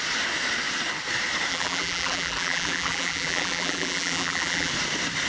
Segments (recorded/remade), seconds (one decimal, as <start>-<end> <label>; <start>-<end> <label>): 0.0-1.5 recorded; 1.5-4.7 remade; 4.7-5.3 recorded